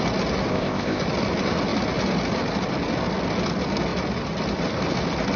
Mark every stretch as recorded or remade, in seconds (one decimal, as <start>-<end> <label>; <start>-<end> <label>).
0.0-0.5 recorded; 0.5-1.0 remade; 1.0-5.4 recorded